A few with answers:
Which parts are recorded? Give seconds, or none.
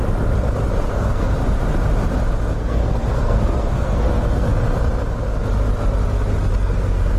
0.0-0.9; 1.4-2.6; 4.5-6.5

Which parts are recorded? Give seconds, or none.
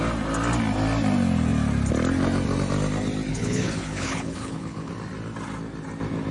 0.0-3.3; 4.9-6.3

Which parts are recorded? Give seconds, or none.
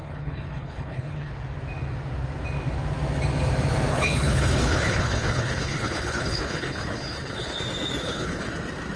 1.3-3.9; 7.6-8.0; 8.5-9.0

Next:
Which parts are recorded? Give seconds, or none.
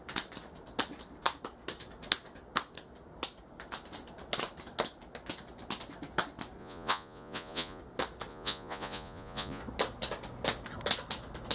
0.0-6.6; 7.8-8.3; 9.6-11.5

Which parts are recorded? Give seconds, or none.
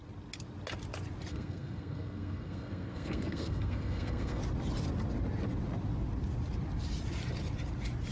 0.0-1.3; 4.4-8.1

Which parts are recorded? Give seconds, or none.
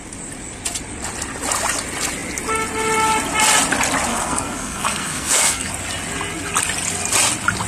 0.0-4.1; 5.7-7.7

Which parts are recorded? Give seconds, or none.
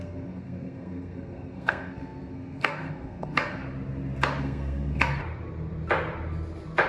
3.6-4.4; 5.2-6.9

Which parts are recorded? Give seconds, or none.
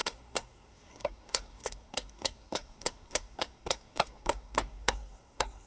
none